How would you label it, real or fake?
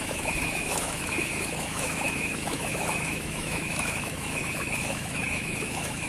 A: fake